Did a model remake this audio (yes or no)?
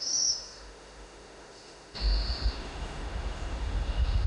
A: yes